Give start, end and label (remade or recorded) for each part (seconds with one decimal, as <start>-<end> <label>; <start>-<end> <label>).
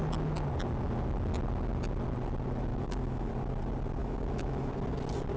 0.0-2.7 recorded; 2.7-3.3 remade; 3.3-4.0 recorded; 4.0-4.7 remade; 4.7-5.4 recorded